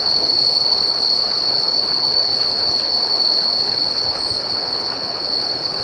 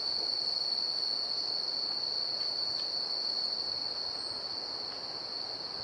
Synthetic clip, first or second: first